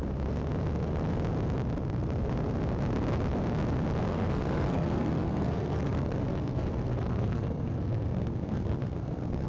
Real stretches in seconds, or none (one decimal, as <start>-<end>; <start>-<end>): 0.0-4.1